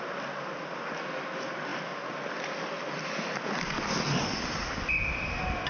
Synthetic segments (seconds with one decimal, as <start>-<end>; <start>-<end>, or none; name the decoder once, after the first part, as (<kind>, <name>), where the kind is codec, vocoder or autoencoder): none